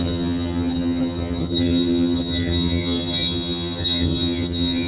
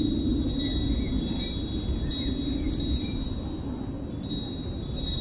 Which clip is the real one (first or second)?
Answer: second